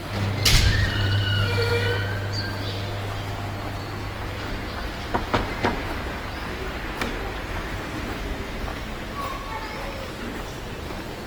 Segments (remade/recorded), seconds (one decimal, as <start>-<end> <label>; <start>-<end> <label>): 0.0-0.5 recorded; 0.5-1.7 remade; 1.7-4.8 recorded; 4.8-6.2 remade; 6.2-11.3 recorded

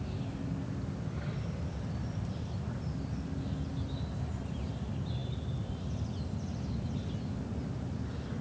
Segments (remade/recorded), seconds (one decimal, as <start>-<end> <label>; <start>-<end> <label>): 0.0-8.4 recorded

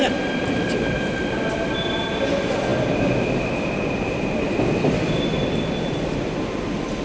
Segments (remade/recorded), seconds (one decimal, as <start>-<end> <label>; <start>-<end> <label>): 0.0-1.7 remade; 1.7-7.0 recorded

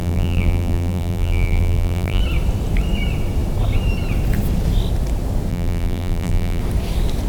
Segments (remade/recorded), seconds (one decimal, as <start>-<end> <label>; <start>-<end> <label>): 0.0-2.2 remade; 2.2-5.5 recorded; 5.5-6.6 remade; 6.6-7.3 recorded

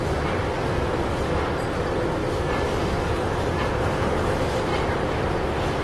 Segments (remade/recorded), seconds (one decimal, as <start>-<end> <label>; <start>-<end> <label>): 0.0-4.7 recorded; 4.7-5.8 remade

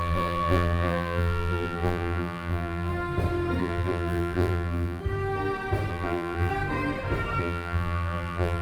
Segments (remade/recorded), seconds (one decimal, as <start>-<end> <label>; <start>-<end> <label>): 0.0-2.9 remade; 2.9-3.6 recorded; 3.6-5.0 remade; 5.0-5.9 recorded; 5.9-6.5 remade; 6.5-7.4 recorded; 7.4-8.6 remade

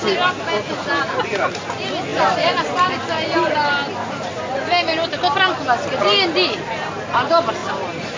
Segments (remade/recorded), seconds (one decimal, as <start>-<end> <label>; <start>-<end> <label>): 0.0-2.1 recorded; 2.1-2.9 remade; 2.9-3.3 recorded; 3.3-4.3 remade; 4.3-7.6 recorded; 7.6-8.2 remade

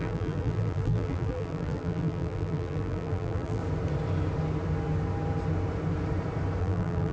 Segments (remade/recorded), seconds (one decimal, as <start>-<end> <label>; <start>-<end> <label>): 0.0-3.6 remade; 3.6-6.6 recorded; 6.6-7.1 remade